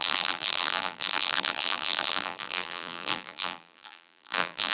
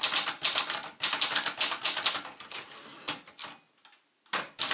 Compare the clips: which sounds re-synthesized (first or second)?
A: first